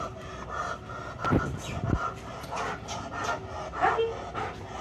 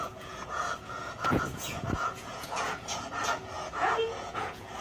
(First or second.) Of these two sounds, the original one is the first